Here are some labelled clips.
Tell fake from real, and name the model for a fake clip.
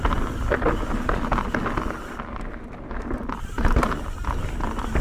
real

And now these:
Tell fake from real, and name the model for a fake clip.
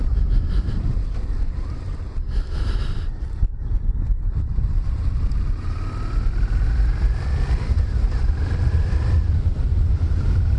fake, vocoder, BigVGAN v2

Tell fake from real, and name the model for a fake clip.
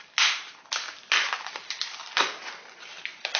real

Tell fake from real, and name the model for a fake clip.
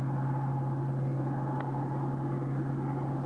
real